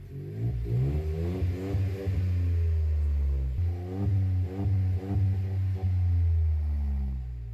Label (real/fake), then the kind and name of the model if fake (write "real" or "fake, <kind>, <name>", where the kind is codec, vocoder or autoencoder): real